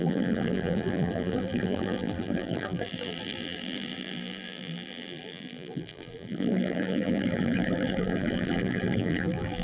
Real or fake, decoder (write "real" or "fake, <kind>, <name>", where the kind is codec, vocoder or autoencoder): fake, vocoder, BigVGAN v2